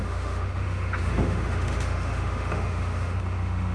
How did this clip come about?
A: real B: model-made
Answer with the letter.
B